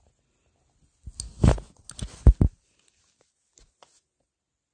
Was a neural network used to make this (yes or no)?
no